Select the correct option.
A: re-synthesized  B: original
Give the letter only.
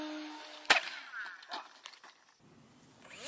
B